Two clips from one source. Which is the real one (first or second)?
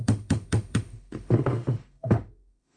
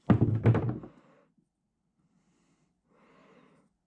second